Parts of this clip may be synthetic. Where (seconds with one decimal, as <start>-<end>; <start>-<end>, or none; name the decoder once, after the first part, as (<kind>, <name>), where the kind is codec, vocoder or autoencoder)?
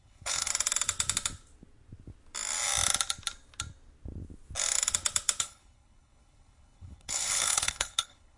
0.0-0.5 (codec, HILCodec); 5.4-8.4